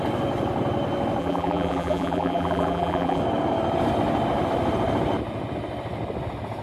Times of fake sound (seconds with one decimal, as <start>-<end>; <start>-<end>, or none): 1.2-3.2